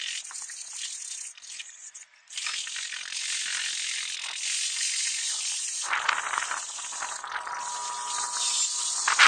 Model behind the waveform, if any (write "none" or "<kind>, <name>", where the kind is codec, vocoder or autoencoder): none